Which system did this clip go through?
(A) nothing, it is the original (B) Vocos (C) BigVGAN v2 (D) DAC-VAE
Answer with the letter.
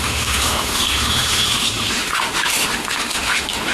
D